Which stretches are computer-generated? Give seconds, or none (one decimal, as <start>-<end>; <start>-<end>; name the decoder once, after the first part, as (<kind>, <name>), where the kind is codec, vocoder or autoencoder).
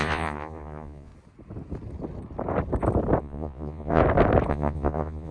0.0-1.1 (vocoder, Vocos); 3.2-4.0; 4.5-5.3